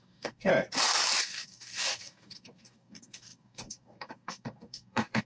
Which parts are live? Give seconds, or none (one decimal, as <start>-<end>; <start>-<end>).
0.5-1.2